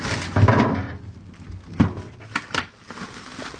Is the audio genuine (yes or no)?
yes